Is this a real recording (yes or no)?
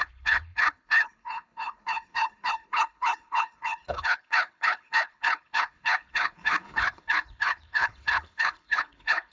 no